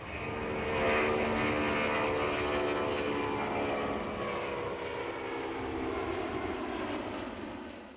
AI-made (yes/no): no